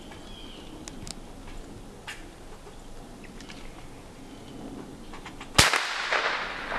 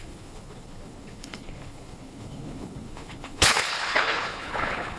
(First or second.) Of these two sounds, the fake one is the second